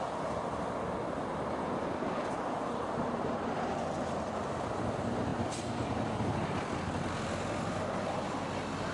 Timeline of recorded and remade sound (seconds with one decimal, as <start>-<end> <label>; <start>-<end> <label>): 0.0-8.9 recorded